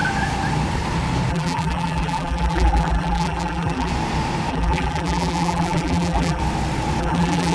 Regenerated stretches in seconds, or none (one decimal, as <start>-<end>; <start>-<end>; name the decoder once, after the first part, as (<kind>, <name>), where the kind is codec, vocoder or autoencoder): 1.3-3.9 (vocoder, BigVGAN v2); 4.5-6.4; 7.0-7.5